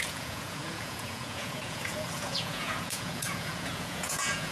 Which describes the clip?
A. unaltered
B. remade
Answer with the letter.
B